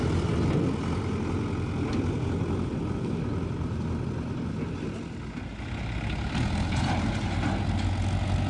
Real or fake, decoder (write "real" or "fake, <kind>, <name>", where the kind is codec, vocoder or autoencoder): real